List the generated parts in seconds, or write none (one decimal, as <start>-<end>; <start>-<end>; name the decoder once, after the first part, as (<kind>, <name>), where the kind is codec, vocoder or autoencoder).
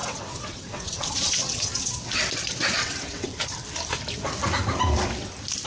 0.0-2.1 (vocoder, WaveNeXt); 2.8-3.4